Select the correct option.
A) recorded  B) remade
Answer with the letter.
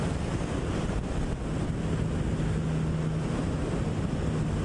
A